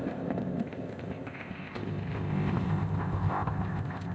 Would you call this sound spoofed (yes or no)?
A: yes